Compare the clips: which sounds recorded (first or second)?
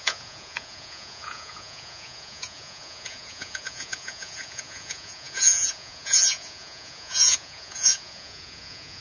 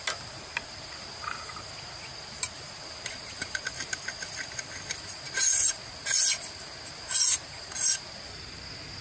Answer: second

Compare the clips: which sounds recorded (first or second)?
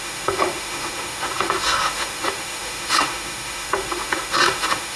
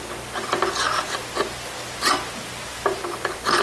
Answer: second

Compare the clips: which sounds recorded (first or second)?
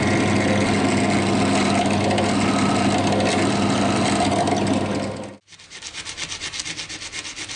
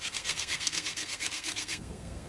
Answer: first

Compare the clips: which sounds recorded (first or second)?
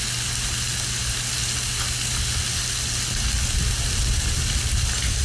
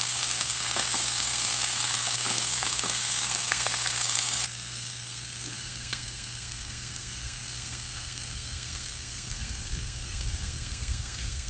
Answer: first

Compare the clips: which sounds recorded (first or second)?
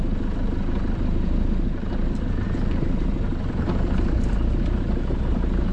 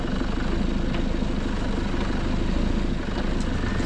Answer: second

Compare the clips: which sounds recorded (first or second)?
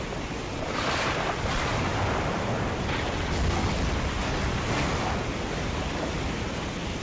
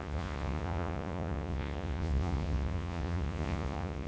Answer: first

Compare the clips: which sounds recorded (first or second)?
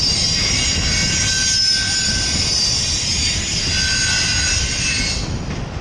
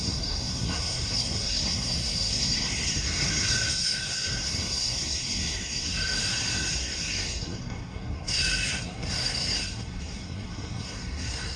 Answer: first